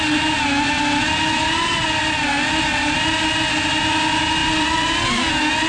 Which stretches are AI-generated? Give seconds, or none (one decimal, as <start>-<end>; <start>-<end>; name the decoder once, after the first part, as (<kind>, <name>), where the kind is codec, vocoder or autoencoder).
4.4-5.0 (vocoder, BigVGAN v2)